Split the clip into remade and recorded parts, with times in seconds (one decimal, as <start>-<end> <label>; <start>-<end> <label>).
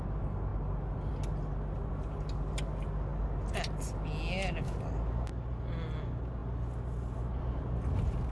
0.0-8.3 recorded